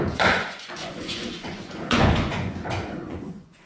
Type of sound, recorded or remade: remade